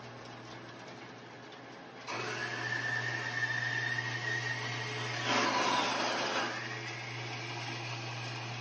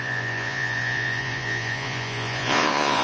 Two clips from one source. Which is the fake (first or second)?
second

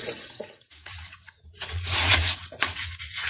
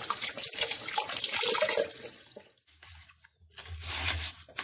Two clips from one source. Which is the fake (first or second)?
first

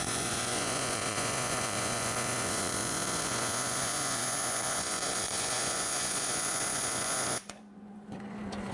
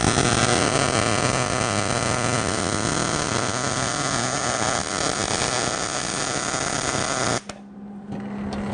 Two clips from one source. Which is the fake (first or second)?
first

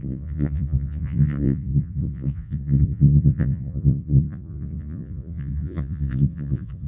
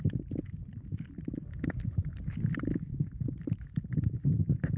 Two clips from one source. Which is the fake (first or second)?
first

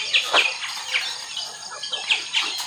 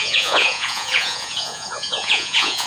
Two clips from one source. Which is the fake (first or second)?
second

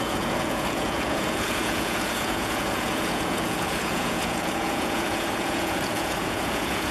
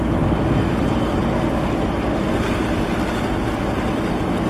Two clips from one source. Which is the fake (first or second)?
first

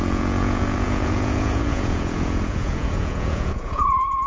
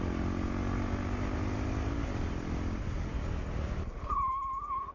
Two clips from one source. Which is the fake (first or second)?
first